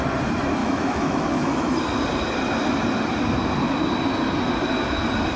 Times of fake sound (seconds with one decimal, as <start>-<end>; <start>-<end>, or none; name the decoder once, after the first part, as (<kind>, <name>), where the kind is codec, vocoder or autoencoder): 0.6-1.8 (autoencoder, DAC-VAE)